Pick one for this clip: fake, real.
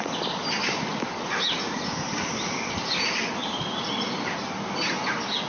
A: real